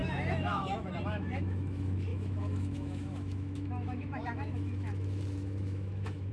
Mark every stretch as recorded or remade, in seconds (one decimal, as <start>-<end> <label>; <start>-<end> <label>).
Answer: 0.0-6.3 remade